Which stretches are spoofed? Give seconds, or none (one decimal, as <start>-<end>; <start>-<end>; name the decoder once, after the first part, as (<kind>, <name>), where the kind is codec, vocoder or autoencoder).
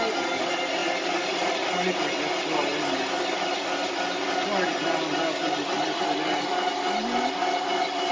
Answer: none